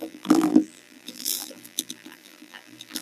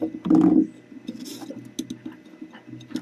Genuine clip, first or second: second